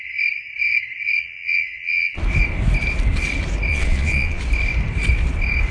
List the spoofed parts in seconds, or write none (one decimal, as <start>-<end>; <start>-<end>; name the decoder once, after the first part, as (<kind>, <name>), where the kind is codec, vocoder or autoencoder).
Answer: 1.2-2.2 (vocoder, Vocos); 3.7-4.4